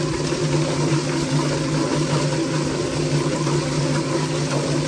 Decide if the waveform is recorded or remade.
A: recorded